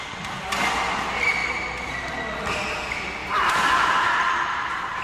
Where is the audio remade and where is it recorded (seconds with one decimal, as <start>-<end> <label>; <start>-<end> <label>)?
0.0-3.2 recorded; 3.2-5.0 remade